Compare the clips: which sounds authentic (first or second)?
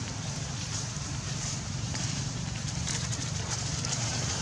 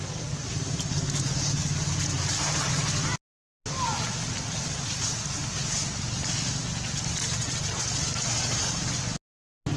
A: second